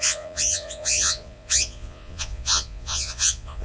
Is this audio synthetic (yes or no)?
yes